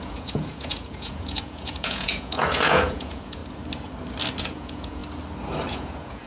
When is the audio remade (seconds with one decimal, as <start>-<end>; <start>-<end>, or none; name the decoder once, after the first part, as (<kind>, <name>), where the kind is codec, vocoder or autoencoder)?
0.0-3.4 (vocoder, Vocos); 4.4-5.0; 5.7-6.3